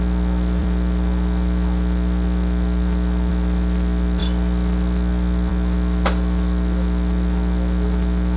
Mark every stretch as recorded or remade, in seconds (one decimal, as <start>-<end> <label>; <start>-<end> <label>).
0.0-0.6 recorded; 0.6-3.3 remade; 3.3-8.4 recorded